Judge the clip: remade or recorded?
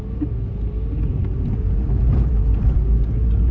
recorded